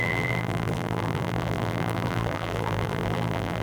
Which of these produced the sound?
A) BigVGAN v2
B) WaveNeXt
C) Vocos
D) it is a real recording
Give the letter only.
A